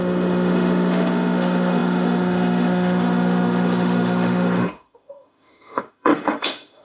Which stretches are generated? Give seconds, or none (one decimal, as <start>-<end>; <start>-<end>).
0.0-6.8